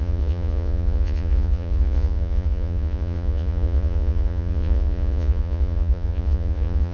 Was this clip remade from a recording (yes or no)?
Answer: yes